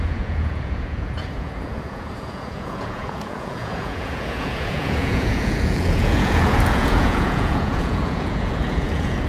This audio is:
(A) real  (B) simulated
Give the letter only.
B